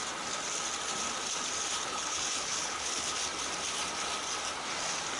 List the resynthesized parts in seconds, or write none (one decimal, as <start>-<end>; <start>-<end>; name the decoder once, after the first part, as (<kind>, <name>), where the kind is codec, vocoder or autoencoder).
1.8-3.2 (codec, HILCodec)

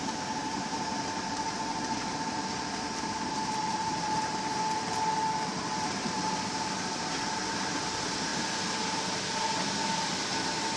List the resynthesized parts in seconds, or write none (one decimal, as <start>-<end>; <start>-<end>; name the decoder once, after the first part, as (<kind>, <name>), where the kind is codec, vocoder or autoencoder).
0.0-8.3 (vocoder, BigVGAN v2)

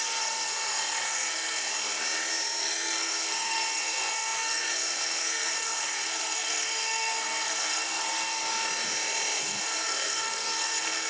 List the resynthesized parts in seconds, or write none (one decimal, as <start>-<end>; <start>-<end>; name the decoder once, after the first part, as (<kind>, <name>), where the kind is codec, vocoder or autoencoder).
0.0-1.7 (codec, SNAC); 2.6-8.4; 9.4-11.1

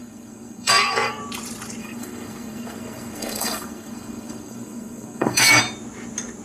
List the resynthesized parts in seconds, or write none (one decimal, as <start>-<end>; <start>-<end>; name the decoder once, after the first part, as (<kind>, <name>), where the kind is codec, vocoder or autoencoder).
0.0-1.2 (codec, SNAC); 1.8-5.6

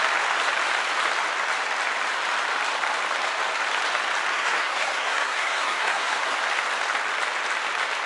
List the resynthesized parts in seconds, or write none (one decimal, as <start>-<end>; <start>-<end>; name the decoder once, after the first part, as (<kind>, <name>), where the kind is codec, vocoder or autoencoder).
4.3-6.4 (codec, SNAC)

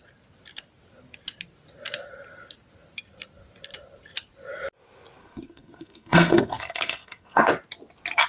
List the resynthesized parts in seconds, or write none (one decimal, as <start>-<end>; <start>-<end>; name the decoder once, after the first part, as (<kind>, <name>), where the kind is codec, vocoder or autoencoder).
5.2-7.5 (codec, SNAC)

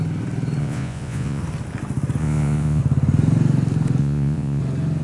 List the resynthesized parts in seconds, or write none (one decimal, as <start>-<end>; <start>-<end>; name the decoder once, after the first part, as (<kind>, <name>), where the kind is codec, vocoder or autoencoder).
0.6-1.4 (vocoder, Vocos); 2.2-2.8; 4.0-4.6

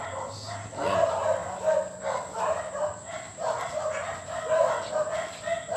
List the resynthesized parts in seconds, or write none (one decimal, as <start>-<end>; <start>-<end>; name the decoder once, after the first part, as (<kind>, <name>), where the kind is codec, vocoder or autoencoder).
none